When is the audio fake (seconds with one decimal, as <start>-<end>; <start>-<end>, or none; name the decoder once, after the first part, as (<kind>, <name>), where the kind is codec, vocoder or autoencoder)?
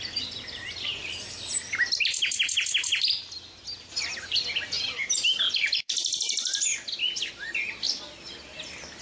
none